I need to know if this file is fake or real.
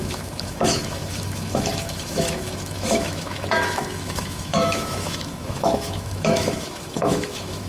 fake